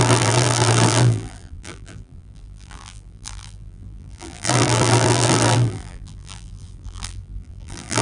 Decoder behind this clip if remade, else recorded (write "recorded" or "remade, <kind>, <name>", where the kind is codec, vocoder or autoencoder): remade, vocoder, BigVGAN v2